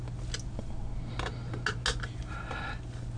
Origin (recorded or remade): recorded